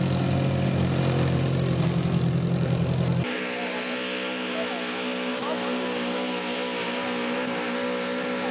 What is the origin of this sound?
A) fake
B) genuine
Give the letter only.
B